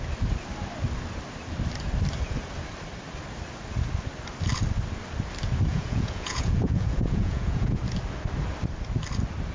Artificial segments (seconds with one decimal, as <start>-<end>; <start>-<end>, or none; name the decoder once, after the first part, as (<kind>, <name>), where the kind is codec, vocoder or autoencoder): 5.7-7.8 (vocoder, Vocos)